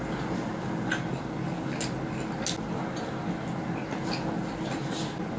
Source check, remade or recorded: recorded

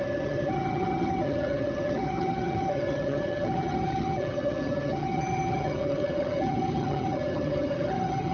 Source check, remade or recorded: remade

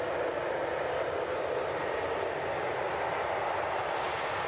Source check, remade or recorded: recorded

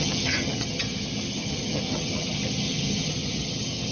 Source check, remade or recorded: remade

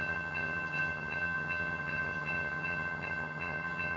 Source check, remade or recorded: remade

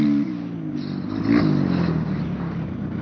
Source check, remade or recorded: recorded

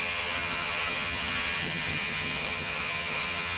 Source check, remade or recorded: remade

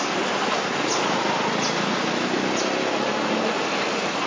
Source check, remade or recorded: recorded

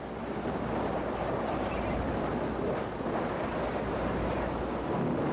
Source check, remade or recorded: recorded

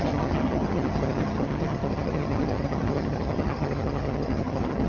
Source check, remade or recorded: remade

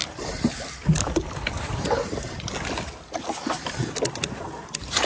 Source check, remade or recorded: recorded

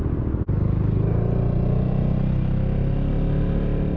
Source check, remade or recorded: recorded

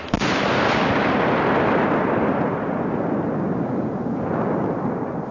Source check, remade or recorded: recorded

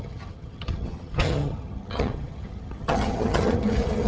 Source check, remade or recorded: remade